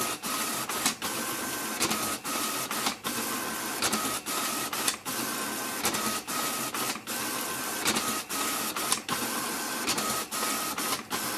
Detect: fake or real real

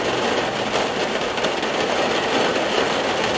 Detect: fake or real real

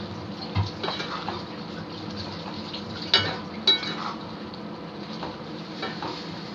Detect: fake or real real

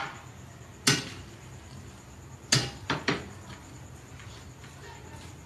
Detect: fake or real real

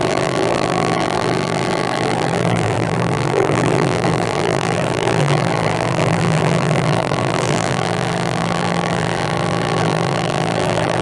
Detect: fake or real fake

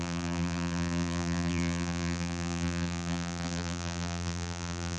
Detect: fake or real fake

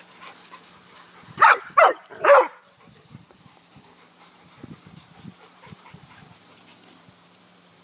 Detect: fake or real fake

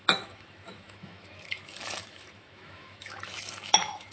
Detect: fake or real fake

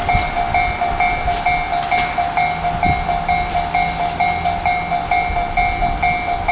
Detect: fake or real real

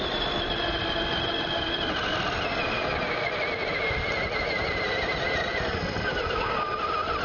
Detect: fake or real real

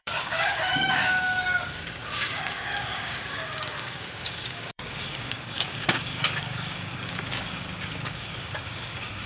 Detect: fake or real fake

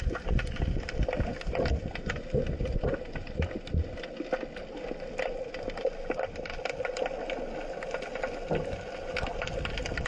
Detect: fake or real real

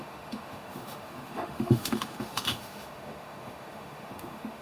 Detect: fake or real fake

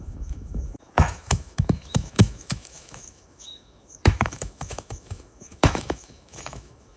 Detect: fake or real fake